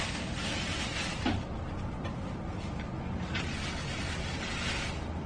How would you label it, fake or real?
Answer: real